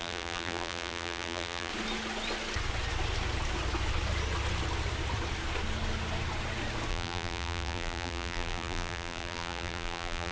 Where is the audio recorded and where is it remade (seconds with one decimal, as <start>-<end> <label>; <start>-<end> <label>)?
0.0-1.7 remade; 1.7-6.9 recorded; 6.9-10.3 remade